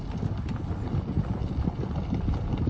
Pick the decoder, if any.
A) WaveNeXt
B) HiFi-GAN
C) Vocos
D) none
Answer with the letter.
D